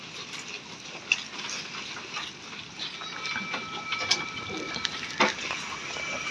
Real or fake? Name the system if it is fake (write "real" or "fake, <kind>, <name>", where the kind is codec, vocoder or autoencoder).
real